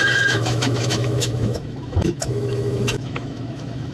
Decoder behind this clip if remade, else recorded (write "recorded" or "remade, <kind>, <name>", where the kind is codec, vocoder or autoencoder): remade, autoencoder, DAC-VAE